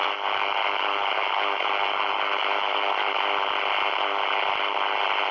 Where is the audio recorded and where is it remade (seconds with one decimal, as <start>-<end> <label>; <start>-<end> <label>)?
0.0-3.1 remade; 3.1-5.3 recorded